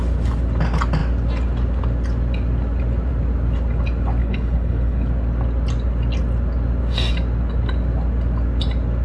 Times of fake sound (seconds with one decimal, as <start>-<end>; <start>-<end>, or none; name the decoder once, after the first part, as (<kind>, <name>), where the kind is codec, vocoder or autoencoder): 4.2-5.1 (codec, HILCodec)